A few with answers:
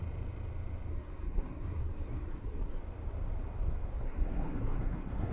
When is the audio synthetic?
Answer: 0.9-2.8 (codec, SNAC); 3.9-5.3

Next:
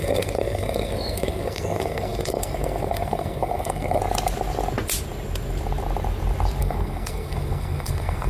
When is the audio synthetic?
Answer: 0.0-4.0 (codec, SNAC); 6.6-8.3

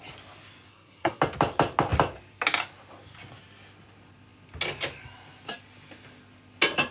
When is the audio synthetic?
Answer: 0.7-1.2 (codec, SNAC)